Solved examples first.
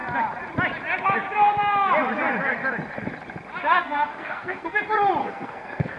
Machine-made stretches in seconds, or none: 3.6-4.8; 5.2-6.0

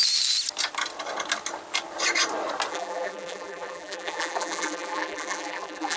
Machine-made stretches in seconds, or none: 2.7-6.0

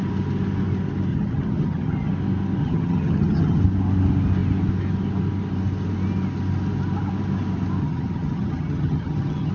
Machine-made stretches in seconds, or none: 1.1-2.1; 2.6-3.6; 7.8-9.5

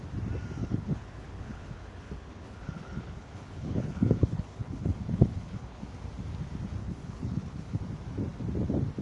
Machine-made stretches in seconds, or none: 0.6-5.8; 6.8-7.8